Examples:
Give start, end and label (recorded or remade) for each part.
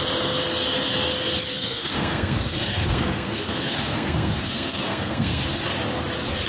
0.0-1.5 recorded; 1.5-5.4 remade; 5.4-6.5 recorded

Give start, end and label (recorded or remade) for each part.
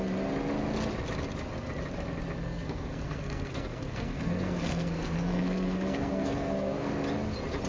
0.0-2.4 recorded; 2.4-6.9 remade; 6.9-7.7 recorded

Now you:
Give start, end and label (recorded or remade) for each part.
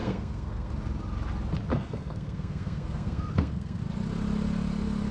0.0-0.7 remade; 0.7-1.7 recorded; 1.7-3.8 remade; 3.8-5.1 recorded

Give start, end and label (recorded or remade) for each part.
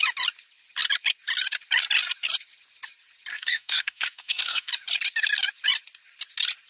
0.0-3.3 recorded; 3.3-4.7 remade; 4.7-6.7 recorded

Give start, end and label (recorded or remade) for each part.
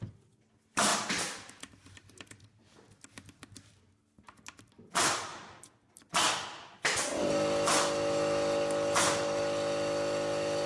0.0-10.7 recorded